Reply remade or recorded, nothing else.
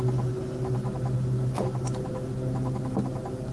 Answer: recorded